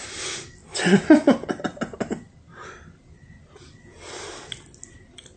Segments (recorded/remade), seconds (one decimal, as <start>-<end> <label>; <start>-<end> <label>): 0.0-5.4 recorded